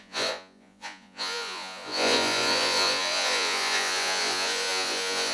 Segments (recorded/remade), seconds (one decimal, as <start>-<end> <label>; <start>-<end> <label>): 0.0-5.3 remade